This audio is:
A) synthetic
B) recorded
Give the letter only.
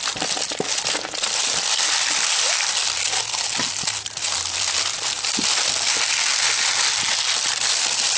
B